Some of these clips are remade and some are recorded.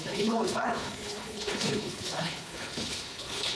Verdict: remade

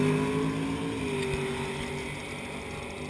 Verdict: recorded